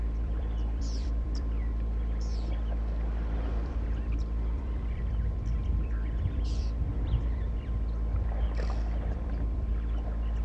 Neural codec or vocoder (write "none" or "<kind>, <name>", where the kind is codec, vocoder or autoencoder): vocoder, BigVGAN v2